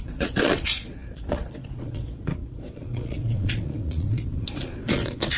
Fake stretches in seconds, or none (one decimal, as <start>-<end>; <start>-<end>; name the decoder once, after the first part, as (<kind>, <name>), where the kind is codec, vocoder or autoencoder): 0.0-5.4 (vocoder, Vocos)